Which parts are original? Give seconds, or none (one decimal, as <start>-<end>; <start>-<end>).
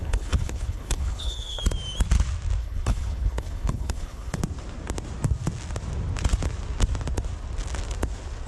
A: 1.6-2.6; 4.4-8.5